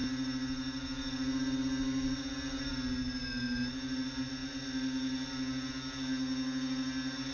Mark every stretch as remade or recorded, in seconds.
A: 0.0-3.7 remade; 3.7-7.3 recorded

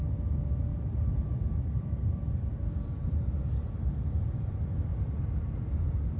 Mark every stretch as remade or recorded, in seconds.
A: 0.0-0.7 recorded; 0.7-4.4 remade; 4.4-6.2 recorded

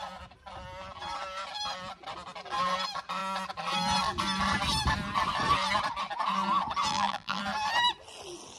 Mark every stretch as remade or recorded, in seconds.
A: 0.0-6.9 recorded; 6.9-7.4 remade; 7.4-8.6 recorded

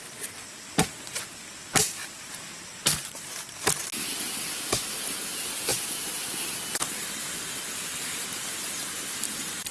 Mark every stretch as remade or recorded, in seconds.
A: 0.0-2.0 recorded; 2.0-4.3 remade; 4.3-9.7 recorded